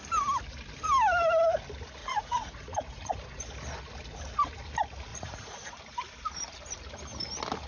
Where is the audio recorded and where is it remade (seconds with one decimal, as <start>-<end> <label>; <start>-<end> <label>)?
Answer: 0.0-2.0 recorded; 2.0-3.4 remade; 3.4-5.1 recorded; 5.1-5.8 remade; 5.8-7.7 recorded